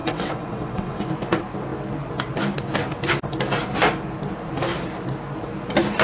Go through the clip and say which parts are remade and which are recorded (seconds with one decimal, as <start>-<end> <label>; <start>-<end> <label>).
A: 0.0-1.1 remade; 1.1-6.0 recorded